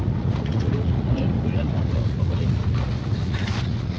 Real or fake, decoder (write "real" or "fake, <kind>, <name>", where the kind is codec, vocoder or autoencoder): fake, vocoder, Vocos